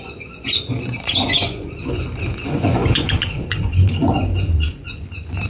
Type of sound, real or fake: fake